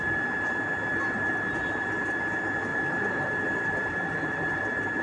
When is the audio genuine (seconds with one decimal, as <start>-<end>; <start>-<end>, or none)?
0.0-2.7; 4.6-5.0